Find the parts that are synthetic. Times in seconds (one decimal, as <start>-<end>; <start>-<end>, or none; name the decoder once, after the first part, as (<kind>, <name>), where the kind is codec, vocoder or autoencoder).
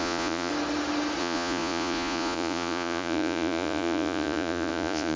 0.0-0.5 (vocoder, Vocos); 1.2-5.2